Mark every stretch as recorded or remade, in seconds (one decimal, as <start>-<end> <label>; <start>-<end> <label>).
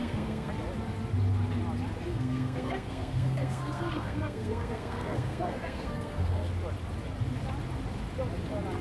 0.0-0.5 remade; 0.5-2.1 recorded; 2.1-6.5 remade; 6.5-8.8 recorded